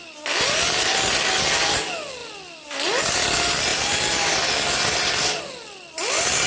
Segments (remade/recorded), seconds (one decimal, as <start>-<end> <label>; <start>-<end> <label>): 0.0-6.5 recorded